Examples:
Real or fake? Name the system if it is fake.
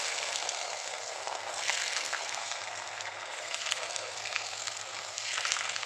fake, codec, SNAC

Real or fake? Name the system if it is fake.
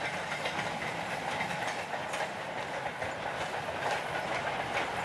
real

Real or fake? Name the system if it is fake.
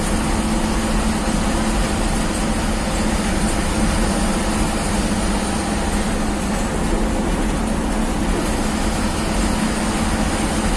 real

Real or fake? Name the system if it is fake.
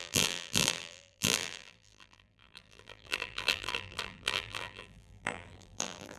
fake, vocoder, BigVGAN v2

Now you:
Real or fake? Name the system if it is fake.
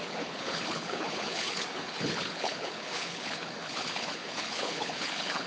fake, codec, HILCodec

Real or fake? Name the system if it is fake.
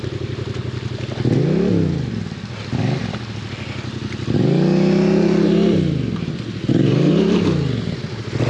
real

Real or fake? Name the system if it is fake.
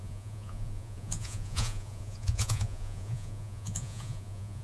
fake, vocoder, Vocos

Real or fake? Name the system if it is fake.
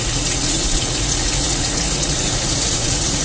fake, vocoder, Vocos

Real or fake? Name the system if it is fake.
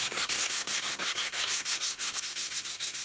fake, codec, SNAC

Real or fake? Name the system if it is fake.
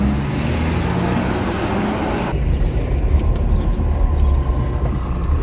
real